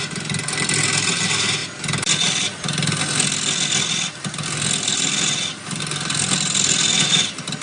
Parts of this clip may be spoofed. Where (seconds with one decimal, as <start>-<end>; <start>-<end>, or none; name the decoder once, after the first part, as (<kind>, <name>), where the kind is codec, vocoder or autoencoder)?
none